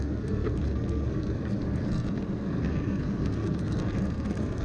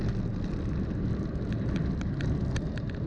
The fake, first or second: first